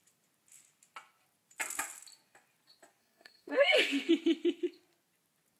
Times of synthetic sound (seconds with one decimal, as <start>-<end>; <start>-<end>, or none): 3.0-4.1